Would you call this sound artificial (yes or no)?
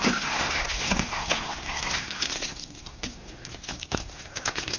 yes